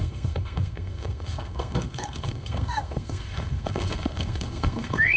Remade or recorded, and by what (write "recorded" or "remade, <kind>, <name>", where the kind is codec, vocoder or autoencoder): remade, codec, SNAC